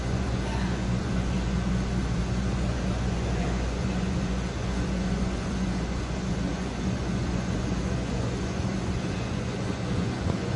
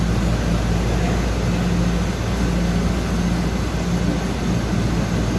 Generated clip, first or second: first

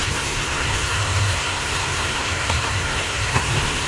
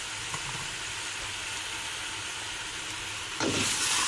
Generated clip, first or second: first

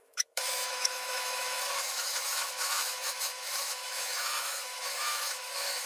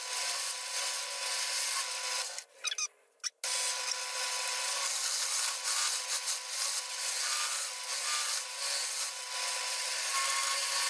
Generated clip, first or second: first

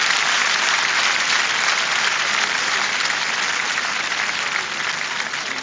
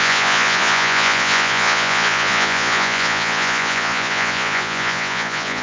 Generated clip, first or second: second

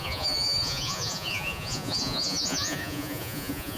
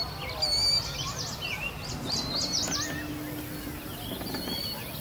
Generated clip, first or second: first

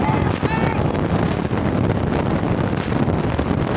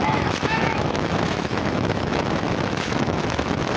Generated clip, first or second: second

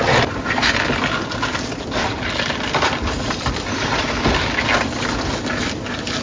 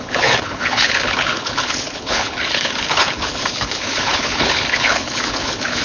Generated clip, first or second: second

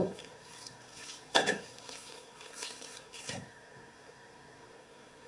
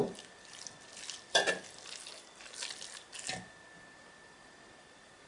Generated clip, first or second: first